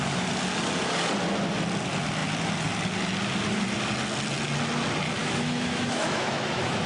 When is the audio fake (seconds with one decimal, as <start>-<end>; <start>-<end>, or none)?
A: 5.2-6.9